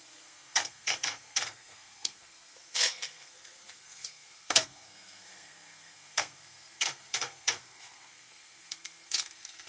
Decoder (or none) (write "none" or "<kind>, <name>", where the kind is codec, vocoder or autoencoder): codec, SNAC